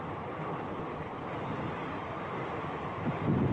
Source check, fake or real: real